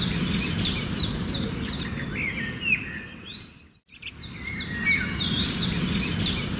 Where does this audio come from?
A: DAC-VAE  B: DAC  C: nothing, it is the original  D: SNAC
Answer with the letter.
C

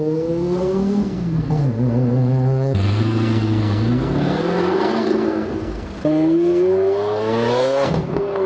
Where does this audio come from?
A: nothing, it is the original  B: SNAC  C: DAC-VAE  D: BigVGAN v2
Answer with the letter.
B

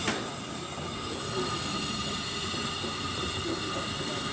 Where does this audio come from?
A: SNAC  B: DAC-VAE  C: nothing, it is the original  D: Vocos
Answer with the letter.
C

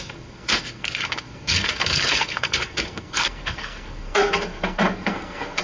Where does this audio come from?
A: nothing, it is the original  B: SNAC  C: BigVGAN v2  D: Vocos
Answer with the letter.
B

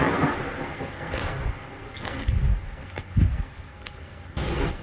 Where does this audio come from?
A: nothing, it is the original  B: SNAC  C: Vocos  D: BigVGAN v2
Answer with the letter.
B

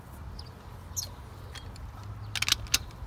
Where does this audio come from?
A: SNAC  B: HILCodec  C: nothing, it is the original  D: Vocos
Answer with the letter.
C